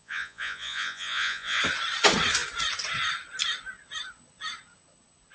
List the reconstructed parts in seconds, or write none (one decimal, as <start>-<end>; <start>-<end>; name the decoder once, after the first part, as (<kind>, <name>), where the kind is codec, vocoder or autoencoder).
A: 0.0-1.6 (vocoder, Vocos)

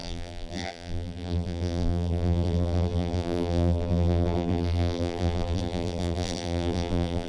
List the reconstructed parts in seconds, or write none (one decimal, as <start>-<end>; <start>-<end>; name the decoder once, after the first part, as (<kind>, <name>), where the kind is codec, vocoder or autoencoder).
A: 0.0-7.3 (vocoder, BigVGAN v2)

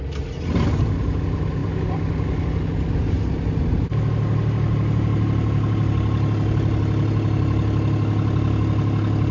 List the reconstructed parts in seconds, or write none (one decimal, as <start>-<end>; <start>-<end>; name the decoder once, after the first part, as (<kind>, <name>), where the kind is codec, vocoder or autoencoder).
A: none